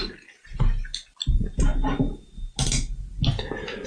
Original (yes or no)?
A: yes